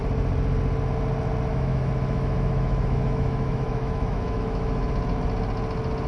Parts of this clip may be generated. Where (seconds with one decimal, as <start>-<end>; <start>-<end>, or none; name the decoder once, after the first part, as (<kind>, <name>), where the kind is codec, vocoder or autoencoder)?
1.5-4.9 (autoencoder, DAC-VAE)